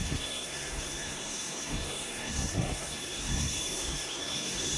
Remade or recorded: remade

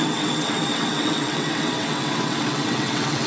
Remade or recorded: remade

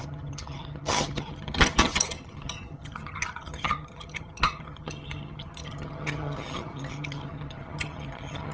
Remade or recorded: remade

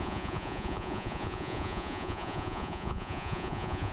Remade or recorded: remade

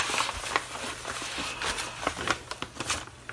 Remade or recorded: recorded